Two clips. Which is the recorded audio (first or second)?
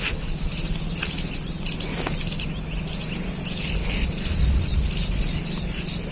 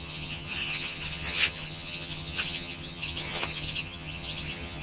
first